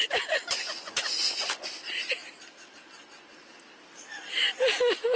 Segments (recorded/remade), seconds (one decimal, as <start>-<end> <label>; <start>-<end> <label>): 0.0-0.6 recorded; 0.6-1.8 remade; 1.8-5.2 recorded